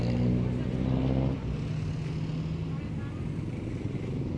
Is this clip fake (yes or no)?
no